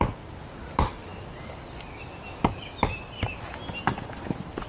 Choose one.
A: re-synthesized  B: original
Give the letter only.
B